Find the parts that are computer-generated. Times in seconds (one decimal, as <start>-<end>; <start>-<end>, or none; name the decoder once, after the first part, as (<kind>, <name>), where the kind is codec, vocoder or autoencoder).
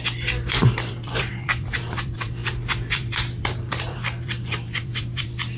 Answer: 0.0-5.6 (vocoder, BigVGAN v2)